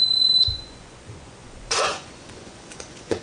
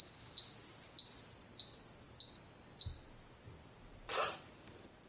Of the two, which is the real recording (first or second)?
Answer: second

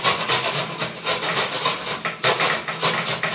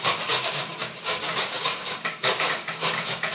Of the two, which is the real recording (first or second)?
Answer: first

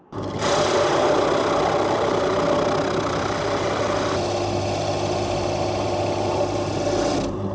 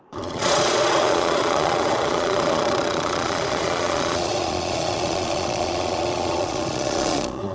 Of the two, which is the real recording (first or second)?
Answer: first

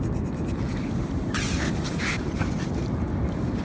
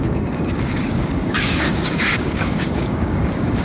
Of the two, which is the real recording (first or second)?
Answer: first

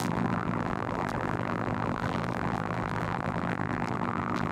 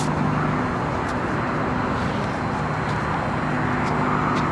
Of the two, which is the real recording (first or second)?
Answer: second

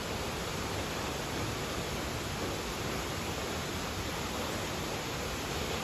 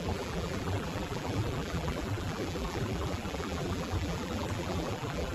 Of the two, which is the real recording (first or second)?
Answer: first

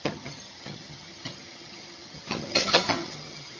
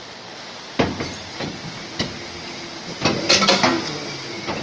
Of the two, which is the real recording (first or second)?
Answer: second